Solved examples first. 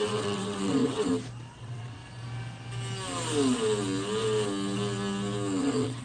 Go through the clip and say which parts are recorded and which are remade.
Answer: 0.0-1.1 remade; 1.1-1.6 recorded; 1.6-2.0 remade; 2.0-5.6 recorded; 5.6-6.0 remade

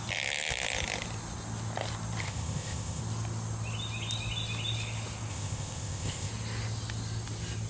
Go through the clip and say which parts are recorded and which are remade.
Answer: 0.0-2.2 recorded; 2.2-3.0 remade; 3.0-5.3 recorded; 5.3-6.3 remade; 6.3-7.7 recorded

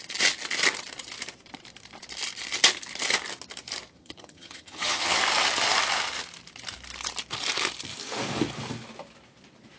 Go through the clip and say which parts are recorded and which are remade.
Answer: 0.0-4.0 recorded; 4.0-5.2 remade; 5.2-9.8 recorded

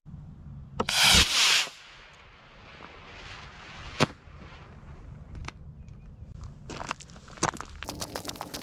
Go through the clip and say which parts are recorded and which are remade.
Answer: 0.0-8.6 recorded